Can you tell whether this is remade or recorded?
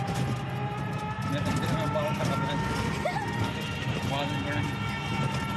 recorded